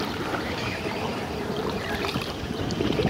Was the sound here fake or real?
fake